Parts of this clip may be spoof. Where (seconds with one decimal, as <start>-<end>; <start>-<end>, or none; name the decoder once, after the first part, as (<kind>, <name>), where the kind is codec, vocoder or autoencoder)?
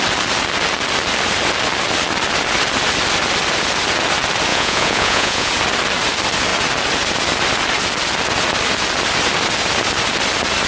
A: 4.5-5.5 (vocoder, Vocos)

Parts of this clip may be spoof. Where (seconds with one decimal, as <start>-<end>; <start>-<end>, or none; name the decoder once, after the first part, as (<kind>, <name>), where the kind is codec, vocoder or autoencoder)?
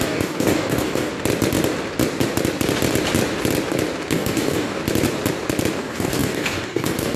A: 0.0-1.1 (codec, DAC); 4.1-4.8; 5.8-7.2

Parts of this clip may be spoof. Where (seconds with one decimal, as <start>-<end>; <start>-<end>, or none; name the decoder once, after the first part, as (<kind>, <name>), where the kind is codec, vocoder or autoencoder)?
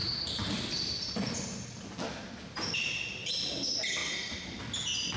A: 4.0-4.6 (vocoder, BigVGAN v2)